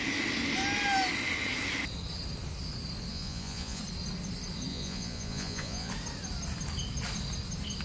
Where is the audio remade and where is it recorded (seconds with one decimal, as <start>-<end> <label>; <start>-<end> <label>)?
0.0-3.1 recorded; 3.1-3.8 remade; 3.8-4.7 recorded; 4.7-5.9 remade; 5.9-7.8 recorded